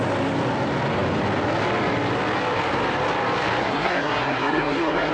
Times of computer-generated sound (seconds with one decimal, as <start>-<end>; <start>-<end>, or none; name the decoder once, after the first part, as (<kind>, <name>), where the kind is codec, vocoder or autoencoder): 3.6-5.1 (codec, SNAC)